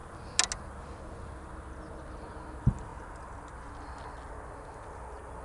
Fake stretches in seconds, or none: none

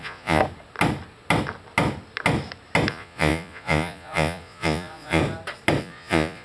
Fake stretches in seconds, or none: 0.0-0.4; 2.9-5.2; 5.8-6.4

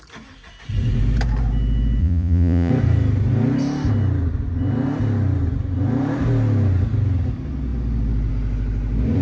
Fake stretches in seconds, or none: 2.0-2.7

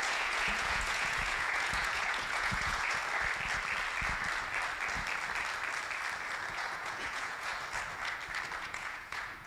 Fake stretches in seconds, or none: 0.0-3.0; 6.5-7.5; 8.6-9.5

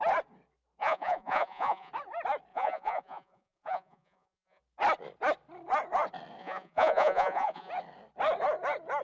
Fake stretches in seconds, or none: 0.8-1.9; 2.5-4.6; 6.4-7.7